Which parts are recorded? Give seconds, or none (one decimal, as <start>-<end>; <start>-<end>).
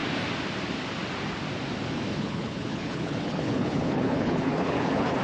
0.0-2.1